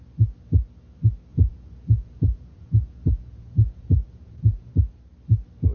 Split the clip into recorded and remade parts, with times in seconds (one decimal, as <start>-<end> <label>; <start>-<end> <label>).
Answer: 0.0-1.3 recorded; 1.3-4.7 remade; 4.7-5.7 recorded